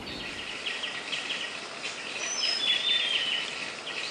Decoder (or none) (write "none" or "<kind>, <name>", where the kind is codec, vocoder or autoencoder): none